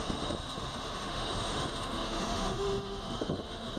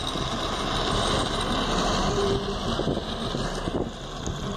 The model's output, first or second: first